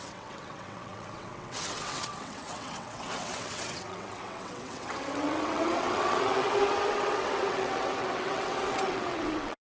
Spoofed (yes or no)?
yes